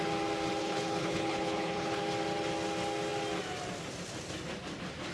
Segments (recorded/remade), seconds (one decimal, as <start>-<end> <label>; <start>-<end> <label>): 0.0-0.6 recorded; 0.6-2.0 remade; 2.0-5.1 recorded